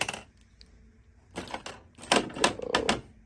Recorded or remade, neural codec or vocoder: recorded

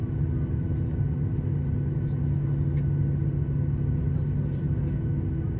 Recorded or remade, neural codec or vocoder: recorded